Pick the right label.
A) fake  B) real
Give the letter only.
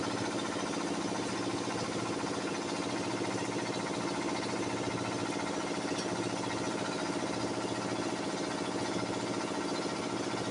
B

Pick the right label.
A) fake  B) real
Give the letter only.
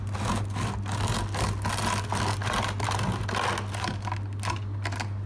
B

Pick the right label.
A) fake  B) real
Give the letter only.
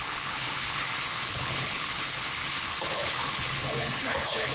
A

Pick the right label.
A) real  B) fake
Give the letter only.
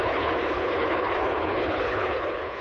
B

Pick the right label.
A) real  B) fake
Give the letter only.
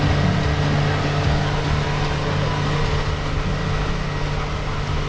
A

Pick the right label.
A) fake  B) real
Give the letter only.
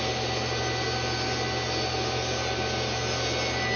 B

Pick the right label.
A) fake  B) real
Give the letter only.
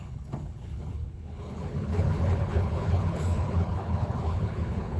A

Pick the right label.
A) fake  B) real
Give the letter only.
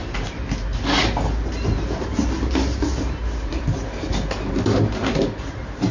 B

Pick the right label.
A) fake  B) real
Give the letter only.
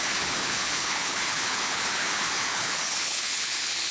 A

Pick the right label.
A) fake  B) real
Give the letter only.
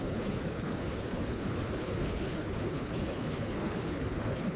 A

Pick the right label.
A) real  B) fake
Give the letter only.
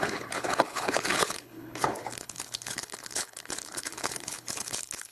B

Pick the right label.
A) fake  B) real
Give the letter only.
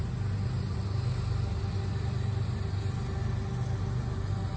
B